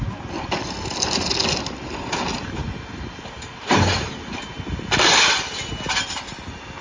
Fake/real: real